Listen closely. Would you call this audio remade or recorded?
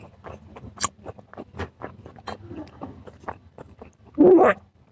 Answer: recorded